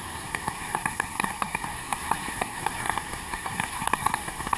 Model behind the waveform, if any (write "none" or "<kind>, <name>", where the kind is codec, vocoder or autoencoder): codec, SNAC